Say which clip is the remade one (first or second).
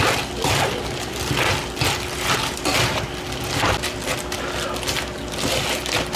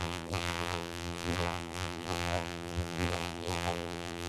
second